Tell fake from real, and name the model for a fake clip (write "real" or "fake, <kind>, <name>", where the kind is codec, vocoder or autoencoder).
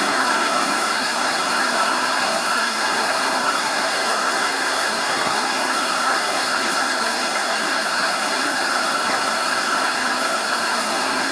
fake, codec, SNAC